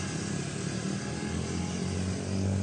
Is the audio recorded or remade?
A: recorded